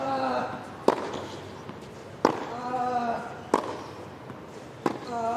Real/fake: real